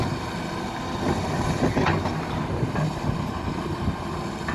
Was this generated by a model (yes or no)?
no